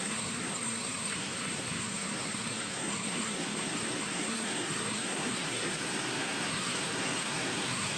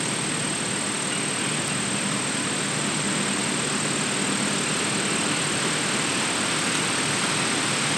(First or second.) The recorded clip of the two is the second